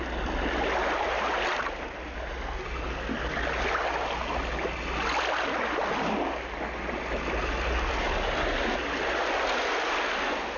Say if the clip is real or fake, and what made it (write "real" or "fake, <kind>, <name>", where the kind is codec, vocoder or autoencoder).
real